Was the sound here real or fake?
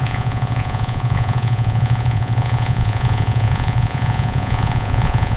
fake